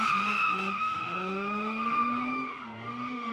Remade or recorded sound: remade